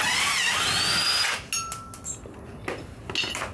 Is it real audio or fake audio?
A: real